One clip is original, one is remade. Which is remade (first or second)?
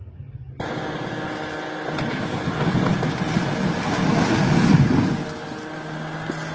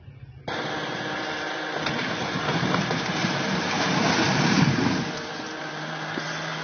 second